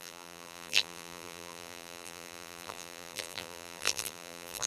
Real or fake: fake